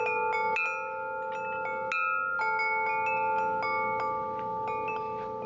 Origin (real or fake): real